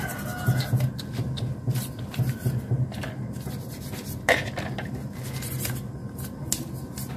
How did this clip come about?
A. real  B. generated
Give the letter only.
A